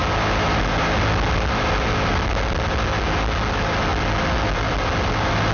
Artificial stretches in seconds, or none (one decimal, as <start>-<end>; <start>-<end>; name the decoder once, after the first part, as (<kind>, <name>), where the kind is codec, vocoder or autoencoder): none